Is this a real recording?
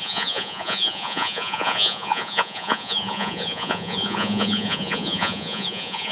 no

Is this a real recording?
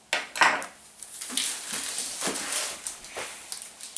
yes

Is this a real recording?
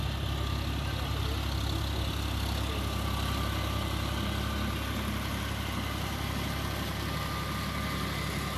yes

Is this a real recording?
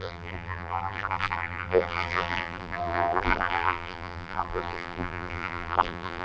no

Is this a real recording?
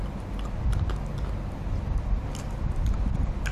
yes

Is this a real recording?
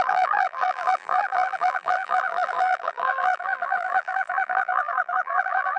no